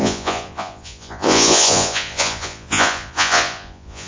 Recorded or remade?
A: remade